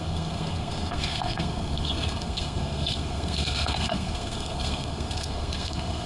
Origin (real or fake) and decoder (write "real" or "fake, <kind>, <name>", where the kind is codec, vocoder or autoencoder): fake, codec, SNAC